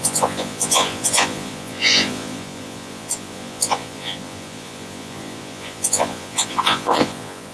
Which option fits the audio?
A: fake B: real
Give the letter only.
A